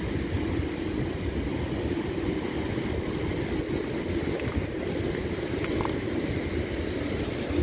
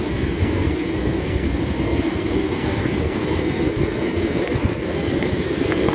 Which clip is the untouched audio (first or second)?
first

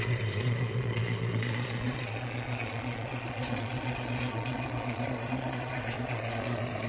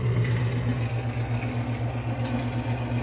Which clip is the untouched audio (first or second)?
second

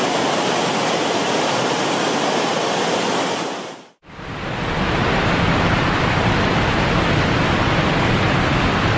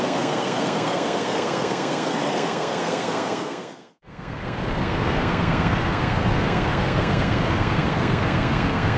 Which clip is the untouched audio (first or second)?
first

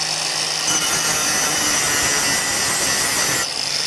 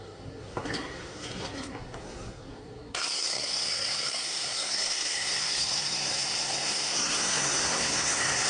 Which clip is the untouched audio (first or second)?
first